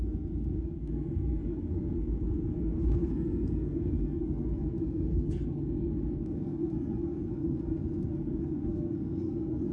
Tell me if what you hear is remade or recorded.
remade